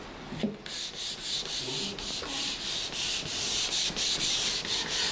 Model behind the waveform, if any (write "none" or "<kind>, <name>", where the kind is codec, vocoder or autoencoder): none